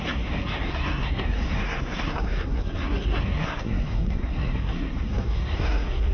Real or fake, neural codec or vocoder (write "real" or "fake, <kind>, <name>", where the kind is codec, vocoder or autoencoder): fake, codec, SNAC